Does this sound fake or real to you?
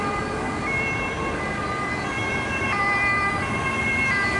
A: real